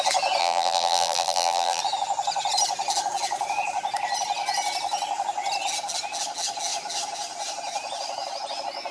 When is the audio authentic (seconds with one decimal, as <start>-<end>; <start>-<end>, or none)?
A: 0.0-0.4; 1.8-8.9